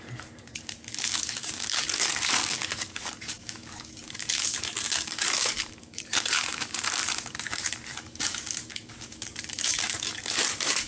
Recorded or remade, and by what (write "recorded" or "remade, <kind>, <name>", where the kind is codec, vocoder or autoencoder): remade, codec, DAC